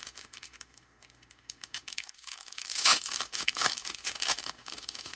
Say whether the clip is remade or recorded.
remade